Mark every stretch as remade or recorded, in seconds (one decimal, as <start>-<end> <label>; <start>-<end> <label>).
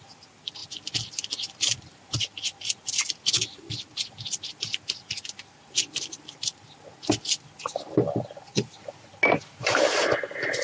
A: 0.0-10.6 recorded